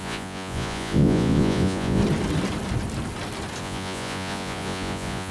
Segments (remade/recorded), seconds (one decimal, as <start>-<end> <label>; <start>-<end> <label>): 0.0-2.0 remade; 2.0-3.6 recorded; 3.6-5.3 remade